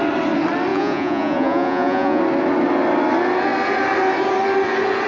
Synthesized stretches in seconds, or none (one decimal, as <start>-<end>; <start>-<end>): 0.7-2.2